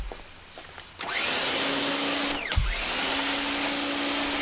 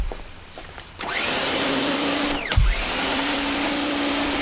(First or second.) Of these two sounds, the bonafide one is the first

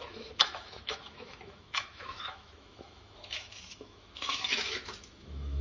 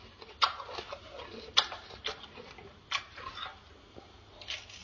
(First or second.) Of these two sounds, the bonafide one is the second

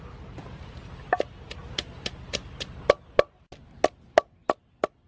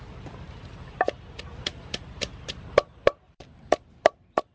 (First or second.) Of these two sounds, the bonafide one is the first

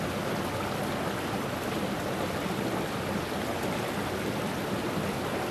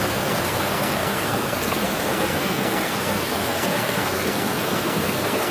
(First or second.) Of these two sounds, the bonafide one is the first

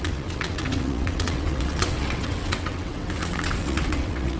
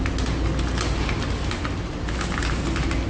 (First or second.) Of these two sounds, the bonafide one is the second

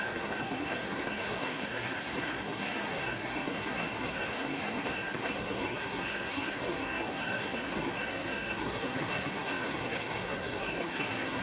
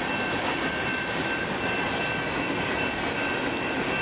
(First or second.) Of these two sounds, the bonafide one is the second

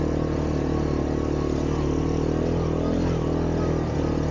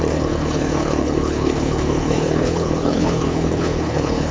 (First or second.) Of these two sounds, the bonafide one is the first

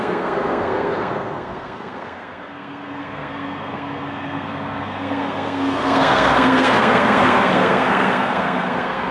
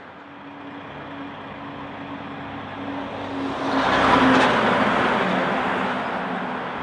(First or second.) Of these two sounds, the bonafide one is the second